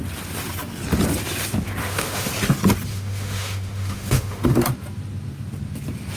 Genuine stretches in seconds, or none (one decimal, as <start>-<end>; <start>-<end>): 0.0-1.8; 2.3-2.9; 4.6-6.2